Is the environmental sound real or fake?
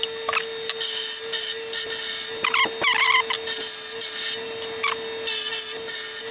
real